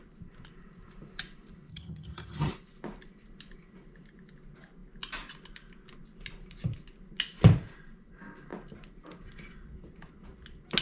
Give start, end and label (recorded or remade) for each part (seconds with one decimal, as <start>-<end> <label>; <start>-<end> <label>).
0.0-1.7 recorded; 1.7-2.5 remade; 2.5-10.8 recorded